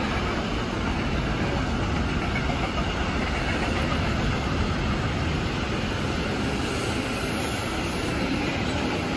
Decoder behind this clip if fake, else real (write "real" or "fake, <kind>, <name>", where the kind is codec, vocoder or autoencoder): real